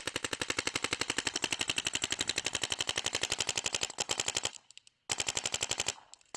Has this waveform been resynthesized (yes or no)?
no